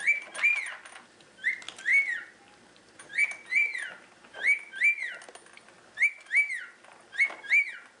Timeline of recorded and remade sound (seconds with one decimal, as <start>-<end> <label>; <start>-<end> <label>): 0.0-1.9 recorded; 1.9-3.0 remade; 3.0-3.7 recorded; 3.7-4.6 remade; 4.6-8.0 recorded